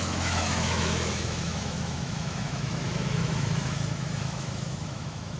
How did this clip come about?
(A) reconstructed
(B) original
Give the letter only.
A